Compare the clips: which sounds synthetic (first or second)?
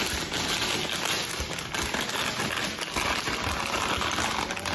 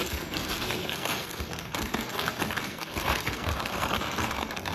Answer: second